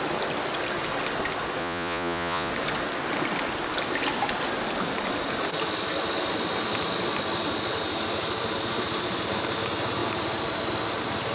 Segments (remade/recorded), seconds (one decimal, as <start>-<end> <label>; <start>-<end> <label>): 0.0-1.6 recorded; 1.6-2.5 remade; 2.5-11.3 recorded